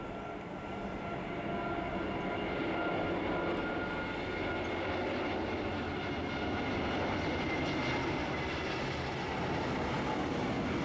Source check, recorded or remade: recorded